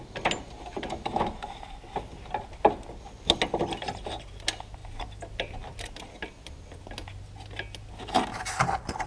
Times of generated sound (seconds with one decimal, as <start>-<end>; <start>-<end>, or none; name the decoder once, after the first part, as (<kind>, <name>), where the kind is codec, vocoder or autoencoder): none